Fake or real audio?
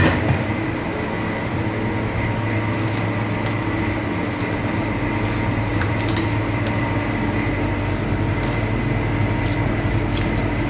real